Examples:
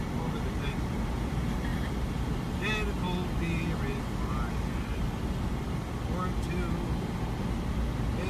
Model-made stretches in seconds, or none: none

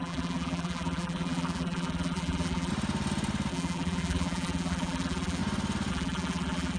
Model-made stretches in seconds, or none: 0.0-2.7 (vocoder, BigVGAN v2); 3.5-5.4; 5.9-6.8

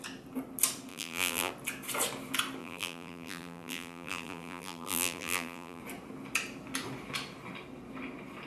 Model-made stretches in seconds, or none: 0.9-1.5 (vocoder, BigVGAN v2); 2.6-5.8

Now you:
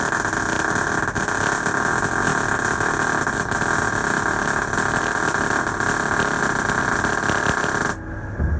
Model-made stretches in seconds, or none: 2.3-7.1 (vocoder, BigVGAN v2)